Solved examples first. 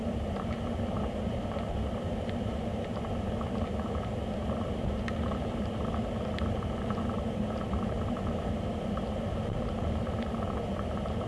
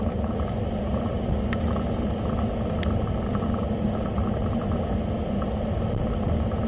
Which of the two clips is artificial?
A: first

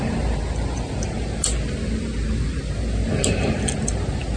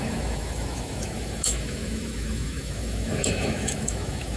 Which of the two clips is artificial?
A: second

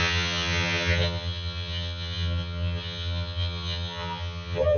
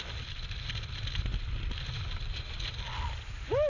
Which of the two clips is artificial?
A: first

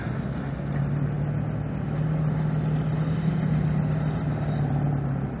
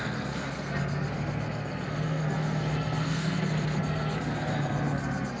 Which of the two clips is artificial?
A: second